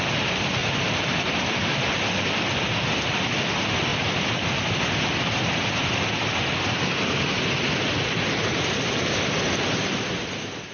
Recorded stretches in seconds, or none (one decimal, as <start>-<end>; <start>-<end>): 0.0-10.7